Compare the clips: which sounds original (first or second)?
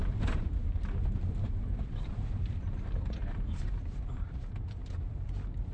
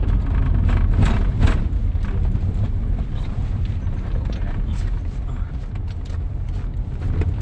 second